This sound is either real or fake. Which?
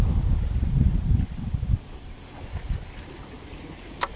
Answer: real